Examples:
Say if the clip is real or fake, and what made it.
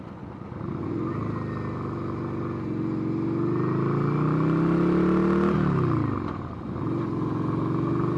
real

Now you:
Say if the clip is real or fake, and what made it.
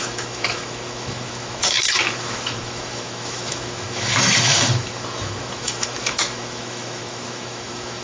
fake, autoencoder, DAC-VAE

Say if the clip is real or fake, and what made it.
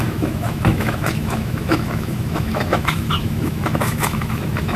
fake, autoencoder, DAC-VAE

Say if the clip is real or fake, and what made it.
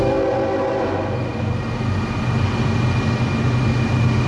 real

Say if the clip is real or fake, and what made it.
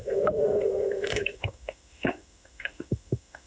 fake, autoencoder, DAC-VAE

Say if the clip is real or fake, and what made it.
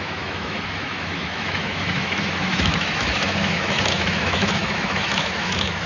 fake, autoencoder, DAC-VAE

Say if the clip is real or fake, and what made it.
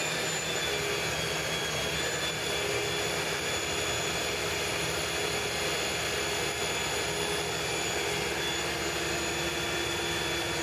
real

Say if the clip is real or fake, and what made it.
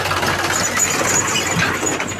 real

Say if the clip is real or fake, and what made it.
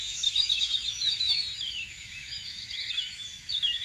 fake, autoencoder, DAC-VAE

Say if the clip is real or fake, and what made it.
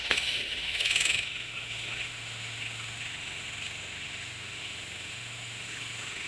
fake, autoencoder, DAC-VAE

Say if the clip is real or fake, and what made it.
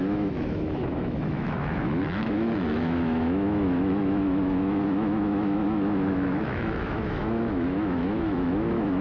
fake, autoencoder, DAC-VAE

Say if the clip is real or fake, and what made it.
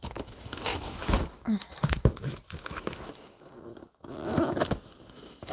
fake, autoencoder, DAC-VAE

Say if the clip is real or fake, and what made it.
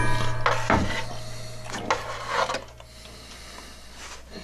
real